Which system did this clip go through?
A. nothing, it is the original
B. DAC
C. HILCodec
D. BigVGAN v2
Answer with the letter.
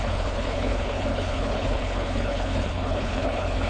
C